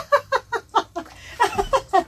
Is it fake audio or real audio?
fake